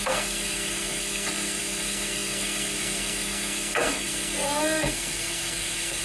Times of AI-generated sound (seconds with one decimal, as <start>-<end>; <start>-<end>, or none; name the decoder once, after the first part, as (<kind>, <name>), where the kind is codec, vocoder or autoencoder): 0.0-6.0 (codec, SNAC)

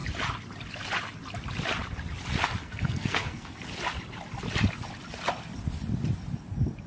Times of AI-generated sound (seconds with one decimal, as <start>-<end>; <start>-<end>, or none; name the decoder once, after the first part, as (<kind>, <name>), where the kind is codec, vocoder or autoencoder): 2.6-3.6 (codec, SNAC)

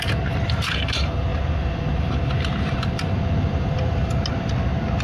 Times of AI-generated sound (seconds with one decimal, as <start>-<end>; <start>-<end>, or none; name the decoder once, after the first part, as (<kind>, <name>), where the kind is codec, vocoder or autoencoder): none

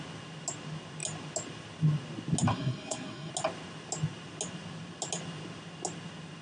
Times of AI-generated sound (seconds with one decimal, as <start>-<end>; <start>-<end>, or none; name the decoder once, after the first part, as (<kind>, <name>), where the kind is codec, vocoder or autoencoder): 2.5-3.3 (codec, SNAC)